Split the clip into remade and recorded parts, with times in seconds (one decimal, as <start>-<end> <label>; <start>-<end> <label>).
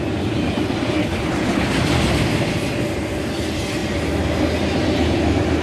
0.0-1.0 recorded; 1.0-1.6 remade; 1.6-5.6 recorded